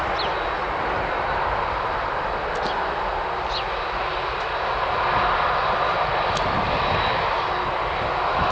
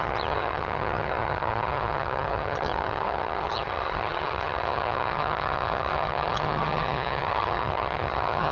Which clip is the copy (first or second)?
second